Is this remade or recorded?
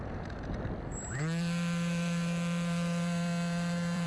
remade